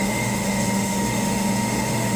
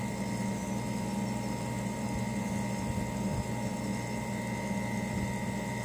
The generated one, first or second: first